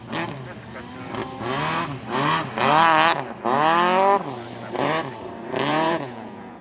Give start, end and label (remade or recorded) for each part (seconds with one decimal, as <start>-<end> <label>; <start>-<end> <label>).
0.0-5.7 recorded; 5.7-6.6 remade